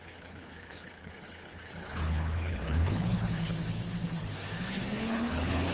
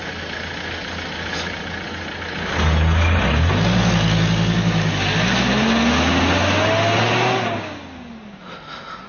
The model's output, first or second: first